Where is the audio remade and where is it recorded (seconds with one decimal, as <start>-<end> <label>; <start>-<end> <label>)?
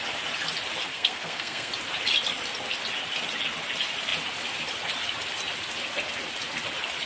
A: 0.0-0.9 recorded; 0.9-1.7 remade; 1.7-7.1 recorded